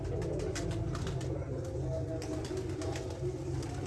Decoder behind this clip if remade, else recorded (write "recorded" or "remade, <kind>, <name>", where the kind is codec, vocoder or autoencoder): recorded